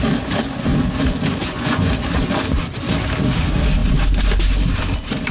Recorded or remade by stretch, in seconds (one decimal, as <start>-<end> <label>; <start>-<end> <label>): 0.0-1.4 recorded; 1.4-1.9 remade; 1.9-5.3 recorded